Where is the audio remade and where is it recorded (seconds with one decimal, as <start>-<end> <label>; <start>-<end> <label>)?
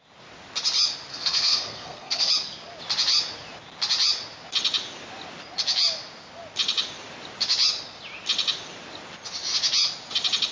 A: 0.0-1.1 recorded; 1.1-2.3 remade; 2.3-10.5 recorded